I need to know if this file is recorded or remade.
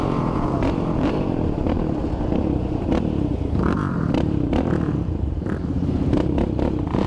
remade